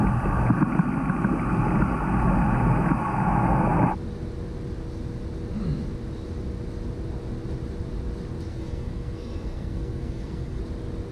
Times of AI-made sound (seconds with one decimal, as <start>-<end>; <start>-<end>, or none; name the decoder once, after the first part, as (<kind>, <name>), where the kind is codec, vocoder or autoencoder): 8.5-10.6 (codec, SNAC)